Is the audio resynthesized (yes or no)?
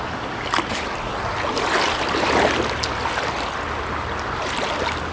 no